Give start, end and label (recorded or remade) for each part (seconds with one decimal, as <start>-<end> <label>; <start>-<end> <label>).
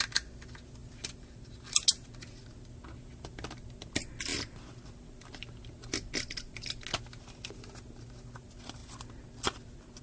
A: 0.0-10.0 recorded